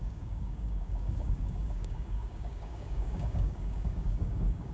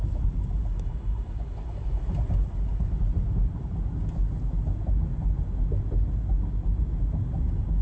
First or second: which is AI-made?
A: first